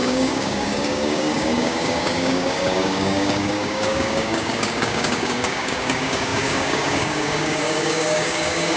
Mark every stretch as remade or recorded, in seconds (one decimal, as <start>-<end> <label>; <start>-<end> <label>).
0.0-8.8 remade